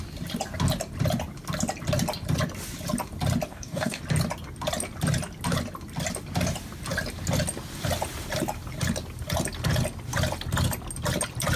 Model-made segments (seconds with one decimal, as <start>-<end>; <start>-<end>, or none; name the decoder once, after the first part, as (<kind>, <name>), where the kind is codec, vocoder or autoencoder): 3.5-4.0 (codec, DAC)